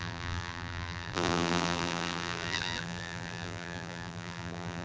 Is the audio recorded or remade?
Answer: remade